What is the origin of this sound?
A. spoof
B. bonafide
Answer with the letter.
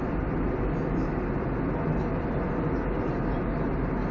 B